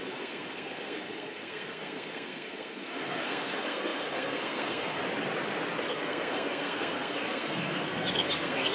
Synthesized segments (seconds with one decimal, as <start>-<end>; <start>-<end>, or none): 0.0-5.0; 5.9-8.7

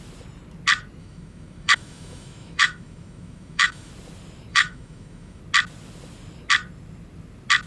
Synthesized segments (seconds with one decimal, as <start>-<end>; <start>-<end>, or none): 1.0-3.9; 4.5-5.4

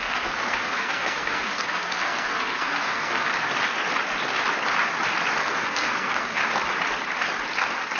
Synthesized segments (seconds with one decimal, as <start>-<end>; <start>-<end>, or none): 0.0-3.3; 5.4-6.4

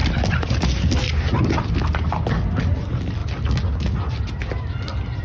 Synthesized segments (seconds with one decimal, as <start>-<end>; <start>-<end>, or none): none

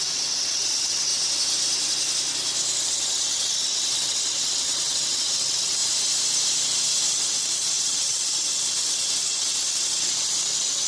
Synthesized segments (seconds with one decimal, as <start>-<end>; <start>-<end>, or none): 0.0-1.1; 2.8-5.8; 7.1-10.9

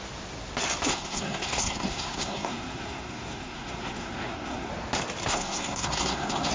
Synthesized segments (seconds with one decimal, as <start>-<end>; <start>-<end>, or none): 0.9-4.7; 5.2-6.5

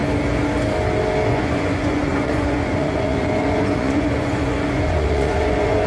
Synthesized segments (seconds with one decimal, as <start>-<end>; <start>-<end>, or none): 1.3-5.9